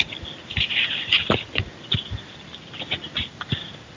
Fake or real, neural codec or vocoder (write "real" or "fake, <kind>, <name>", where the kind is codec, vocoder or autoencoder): real